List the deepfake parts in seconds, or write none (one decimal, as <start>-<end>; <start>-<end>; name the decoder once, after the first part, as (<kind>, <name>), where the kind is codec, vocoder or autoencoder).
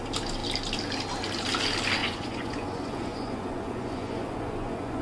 2.0-5.0 (vocoder, Vocos)